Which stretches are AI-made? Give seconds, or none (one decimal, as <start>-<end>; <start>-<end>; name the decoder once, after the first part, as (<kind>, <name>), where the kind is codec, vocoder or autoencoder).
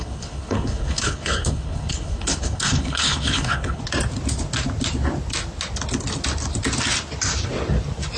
0.0-3.8 (codec, HILCodec)